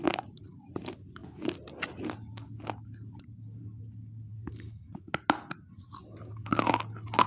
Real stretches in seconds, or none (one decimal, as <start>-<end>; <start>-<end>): 0.0-7.3